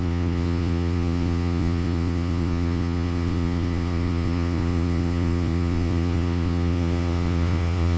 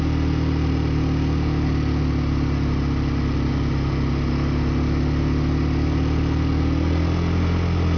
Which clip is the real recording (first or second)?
second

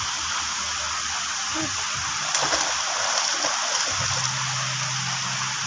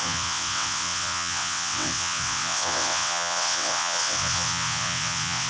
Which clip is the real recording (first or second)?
first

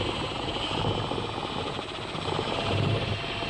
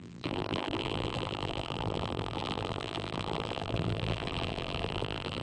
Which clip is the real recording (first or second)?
first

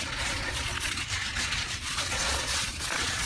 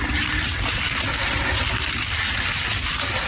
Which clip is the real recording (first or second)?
second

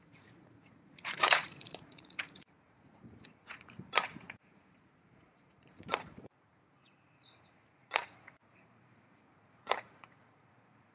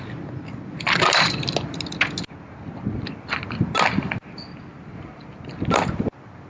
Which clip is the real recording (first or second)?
second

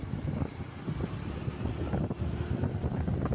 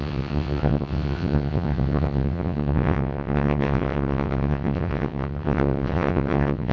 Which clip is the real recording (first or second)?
first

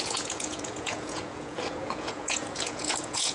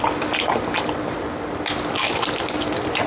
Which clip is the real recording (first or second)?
second